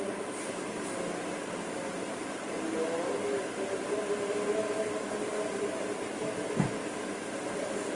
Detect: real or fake real